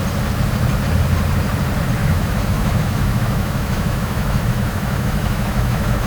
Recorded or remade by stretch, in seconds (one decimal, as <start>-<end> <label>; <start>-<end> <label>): 0.0-2.0 recorded; 2.0-6.1 remade